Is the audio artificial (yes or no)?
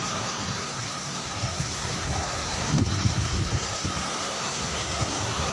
yes